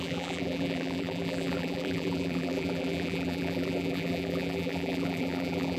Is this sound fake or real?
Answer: fake